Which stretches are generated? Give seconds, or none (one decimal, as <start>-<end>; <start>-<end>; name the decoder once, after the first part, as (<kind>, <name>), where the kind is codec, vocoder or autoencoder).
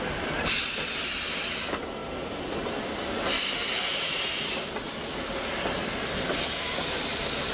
none